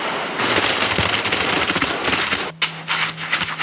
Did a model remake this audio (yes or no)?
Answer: no